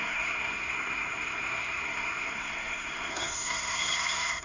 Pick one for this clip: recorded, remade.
remade